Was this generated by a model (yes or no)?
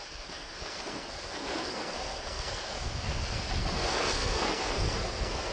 yes